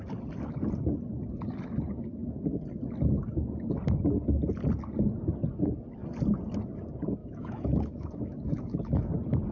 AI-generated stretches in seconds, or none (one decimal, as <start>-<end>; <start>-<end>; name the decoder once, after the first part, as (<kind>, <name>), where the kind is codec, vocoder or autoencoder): 7.2-9.1 (autoencoder, DAC-VAE)